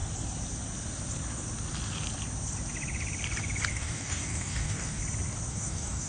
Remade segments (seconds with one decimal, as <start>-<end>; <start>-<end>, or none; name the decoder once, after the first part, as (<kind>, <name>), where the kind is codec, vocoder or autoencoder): 3.7-5.0 (codec, DAC); 5.5-6.1